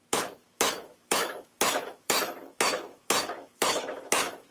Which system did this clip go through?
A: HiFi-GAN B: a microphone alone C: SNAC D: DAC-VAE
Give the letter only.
D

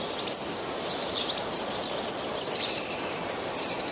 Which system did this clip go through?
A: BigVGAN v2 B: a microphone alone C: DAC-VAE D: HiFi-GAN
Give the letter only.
B